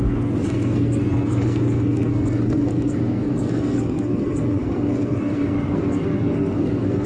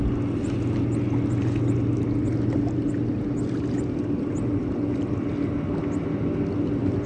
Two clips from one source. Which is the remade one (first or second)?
first